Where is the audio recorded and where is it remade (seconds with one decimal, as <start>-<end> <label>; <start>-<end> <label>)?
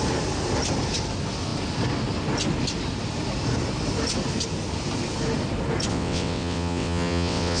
0.0-5.9 recorded; 5.9-7.6 remade